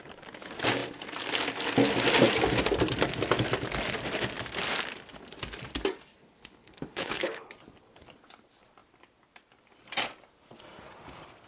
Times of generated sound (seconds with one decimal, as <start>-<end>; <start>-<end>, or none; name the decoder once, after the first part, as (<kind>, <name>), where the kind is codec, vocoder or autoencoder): 6.4-7.5 (codec, HILCodec)